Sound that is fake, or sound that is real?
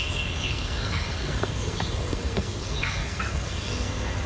fake